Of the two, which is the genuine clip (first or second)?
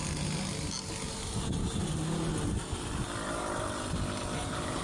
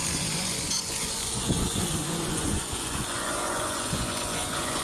first